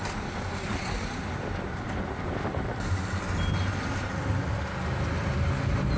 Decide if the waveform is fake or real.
real